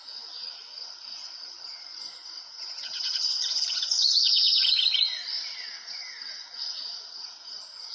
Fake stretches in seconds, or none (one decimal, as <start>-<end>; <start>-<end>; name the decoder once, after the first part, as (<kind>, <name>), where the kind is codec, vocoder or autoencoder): 0.0-1.9 (vocoder, Vocos); 2.4-7.9